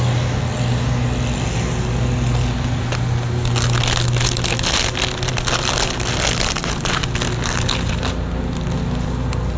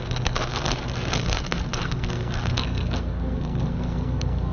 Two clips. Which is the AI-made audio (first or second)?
second